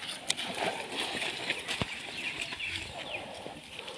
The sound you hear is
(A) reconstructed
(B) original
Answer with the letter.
B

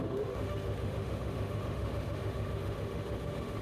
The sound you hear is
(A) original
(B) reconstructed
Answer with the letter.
B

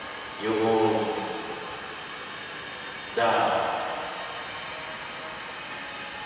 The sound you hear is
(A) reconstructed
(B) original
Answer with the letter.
B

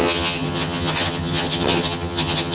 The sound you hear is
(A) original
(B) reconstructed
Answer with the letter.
B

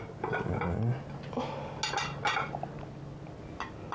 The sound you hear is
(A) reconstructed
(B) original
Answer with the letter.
B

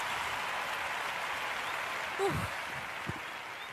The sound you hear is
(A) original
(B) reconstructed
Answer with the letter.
A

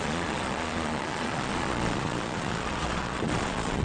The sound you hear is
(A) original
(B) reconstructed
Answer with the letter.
B